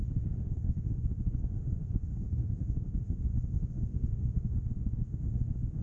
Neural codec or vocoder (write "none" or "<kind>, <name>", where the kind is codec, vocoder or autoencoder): autoencoder, DAC-VAE